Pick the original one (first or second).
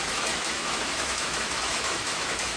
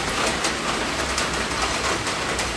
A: second